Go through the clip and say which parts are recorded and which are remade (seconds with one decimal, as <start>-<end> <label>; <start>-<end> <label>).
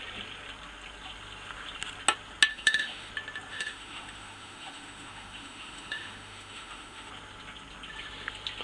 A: 0.0-2.5 recorded; 2.5-3.1 remade; 3.1-3.5 recorded; 3.5-7.1 remade; 7.1-8.6 recorded